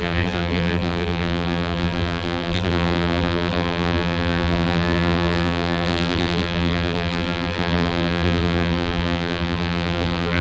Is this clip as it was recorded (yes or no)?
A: no